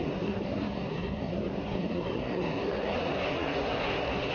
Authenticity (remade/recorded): remade